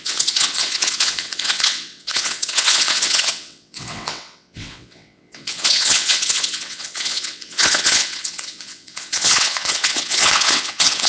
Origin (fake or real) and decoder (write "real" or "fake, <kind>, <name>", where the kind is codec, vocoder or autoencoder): fake, vocoder, WaveNeXt